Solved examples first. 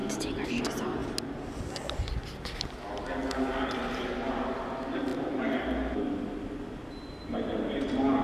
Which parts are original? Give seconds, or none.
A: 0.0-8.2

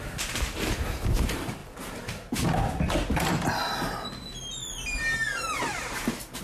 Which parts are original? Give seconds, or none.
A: 1.6-5.4

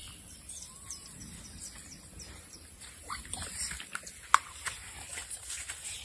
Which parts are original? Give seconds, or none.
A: 0.0-2.1; 3.5-5.2